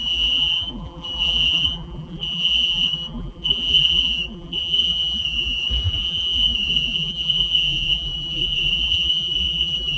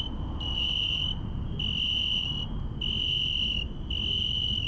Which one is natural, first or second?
second